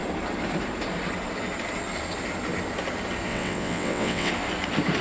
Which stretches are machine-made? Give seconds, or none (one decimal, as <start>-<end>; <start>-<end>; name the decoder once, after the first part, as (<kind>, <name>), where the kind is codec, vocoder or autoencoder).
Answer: 3.3-4.3 (vocoder, WaveNeXt)